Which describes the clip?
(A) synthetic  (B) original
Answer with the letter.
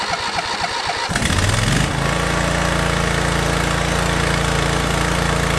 B